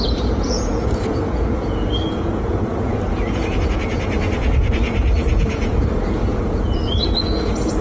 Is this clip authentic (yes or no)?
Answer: no